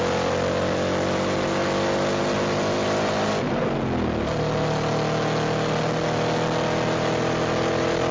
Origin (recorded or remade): recorded